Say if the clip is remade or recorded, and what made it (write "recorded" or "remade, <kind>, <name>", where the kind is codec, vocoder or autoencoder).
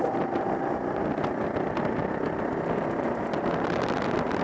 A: recorded